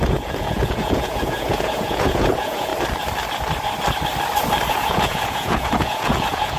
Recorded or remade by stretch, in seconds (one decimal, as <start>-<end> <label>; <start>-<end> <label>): 0.0-2.7 remade; 2.7-4.7 recorded; 4.7-6.6 remade